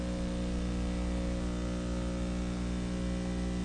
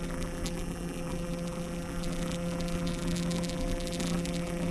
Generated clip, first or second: second